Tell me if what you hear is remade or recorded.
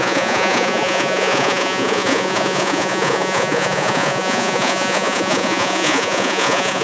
remade